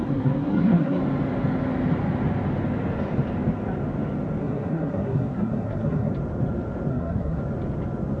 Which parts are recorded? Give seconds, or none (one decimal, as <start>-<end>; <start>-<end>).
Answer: 1.0-4.4; 6.1-6.9; 7.4-8.2